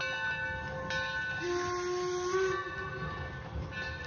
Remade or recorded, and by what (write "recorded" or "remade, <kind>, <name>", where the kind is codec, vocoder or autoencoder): recorded